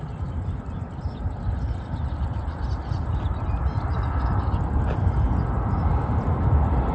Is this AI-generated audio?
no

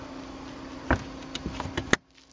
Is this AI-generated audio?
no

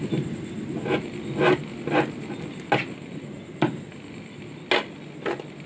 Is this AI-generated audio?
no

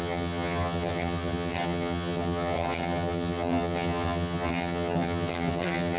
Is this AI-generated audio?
yes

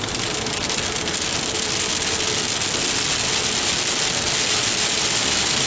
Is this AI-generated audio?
no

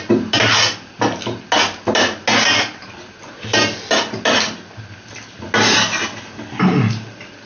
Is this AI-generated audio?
no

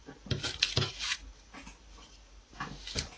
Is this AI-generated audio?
no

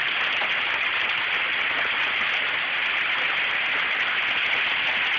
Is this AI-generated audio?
no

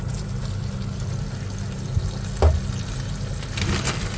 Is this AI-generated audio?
no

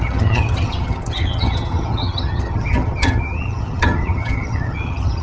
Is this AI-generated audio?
yes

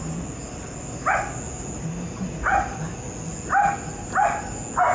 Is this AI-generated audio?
no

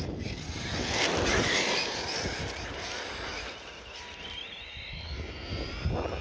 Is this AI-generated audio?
no